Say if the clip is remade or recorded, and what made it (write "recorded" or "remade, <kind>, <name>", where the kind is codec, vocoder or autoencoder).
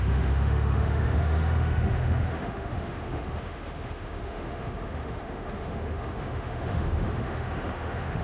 remade, autoencoder, DAC-VAE